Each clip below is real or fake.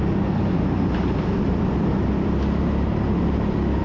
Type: real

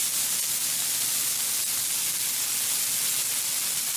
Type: real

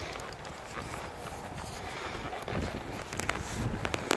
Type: real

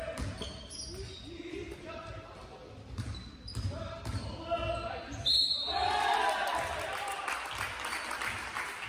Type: real